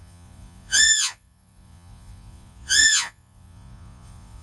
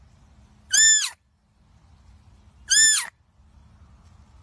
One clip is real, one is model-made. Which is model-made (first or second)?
first